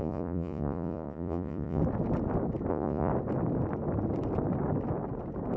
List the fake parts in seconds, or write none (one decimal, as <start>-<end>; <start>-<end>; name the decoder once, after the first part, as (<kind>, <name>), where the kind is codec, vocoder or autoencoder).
0.0-1.8 (vocoder, Vocos); 2.7-3.1

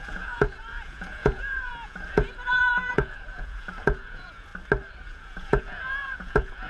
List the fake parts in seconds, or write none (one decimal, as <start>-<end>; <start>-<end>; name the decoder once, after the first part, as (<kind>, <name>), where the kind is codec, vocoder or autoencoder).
0.0-4.5 (vocoder, Vocos); 5.1-6.7

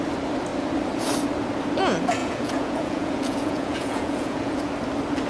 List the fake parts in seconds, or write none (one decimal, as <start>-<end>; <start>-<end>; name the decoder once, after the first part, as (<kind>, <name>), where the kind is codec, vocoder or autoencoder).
2.2-4.7 (vocoder, Vocos)